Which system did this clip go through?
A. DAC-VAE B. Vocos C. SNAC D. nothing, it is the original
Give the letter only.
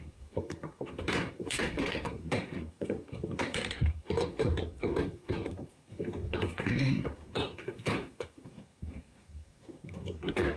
C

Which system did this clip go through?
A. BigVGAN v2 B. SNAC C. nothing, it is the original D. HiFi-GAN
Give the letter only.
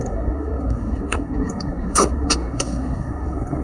B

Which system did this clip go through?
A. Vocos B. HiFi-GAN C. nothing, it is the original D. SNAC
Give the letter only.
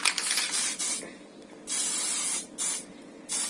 C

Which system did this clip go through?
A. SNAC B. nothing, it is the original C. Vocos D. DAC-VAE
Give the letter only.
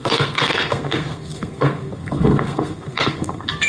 A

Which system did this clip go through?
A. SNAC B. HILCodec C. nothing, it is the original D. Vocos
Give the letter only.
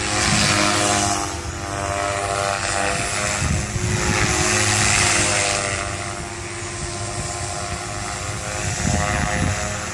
C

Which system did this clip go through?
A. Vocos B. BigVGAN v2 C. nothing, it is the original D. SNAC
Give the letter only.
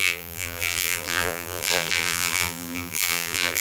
B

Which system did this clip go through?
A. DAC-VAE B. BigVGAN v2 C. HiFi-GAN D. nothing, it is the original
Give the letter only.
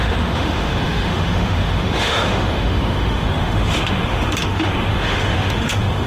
A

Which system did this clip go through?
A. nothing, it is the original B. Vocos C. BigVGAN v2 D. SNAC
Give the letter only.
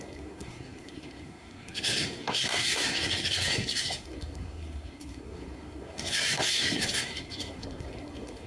D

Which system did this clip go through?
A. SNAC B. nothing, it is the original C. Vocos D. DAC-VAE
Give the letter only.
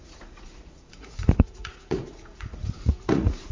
C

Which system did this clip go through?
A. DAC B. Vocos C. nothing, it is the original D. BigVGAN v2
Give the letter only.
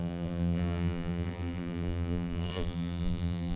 D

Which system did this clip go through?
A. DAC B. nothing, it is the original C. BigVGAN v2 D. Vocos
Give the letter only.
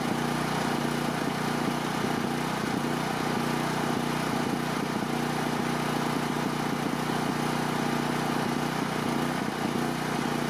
B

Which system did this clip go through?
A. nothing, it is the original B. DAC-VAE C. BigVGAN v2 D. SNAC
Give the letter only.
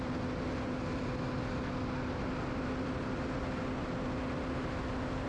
A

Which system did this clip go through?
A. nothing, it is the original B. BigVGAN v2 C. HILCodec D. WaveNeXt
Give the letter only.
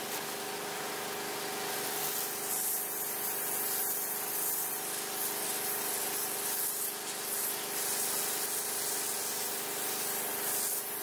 A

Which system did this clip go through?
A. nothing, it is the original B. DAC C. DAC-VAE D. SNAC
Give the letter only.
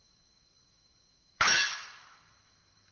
C